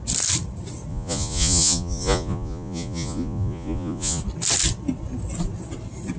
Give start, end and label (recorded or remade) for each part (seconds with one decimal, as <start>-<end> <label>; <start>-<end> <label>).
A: 0.0-0.9 recorded; 0.9-4.2 remade; 4.2-6.2 recorded